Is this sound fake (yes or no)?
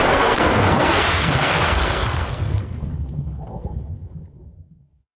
yes